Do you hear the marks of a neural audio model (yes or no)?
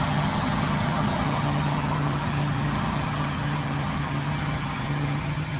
yes